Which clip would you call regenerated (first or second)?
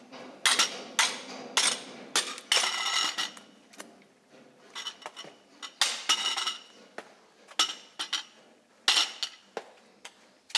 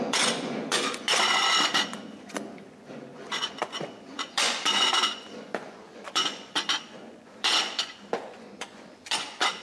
second